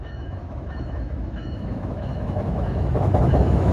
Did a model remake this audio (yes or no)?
yes